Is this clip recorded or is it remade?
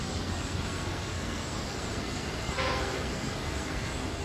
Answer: remade